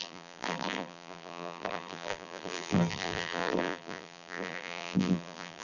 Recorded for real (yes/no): no